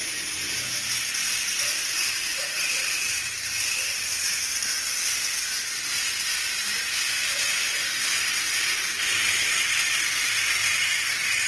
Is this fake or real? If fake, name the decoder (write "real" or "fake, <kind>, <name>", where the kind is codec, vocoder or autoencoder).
real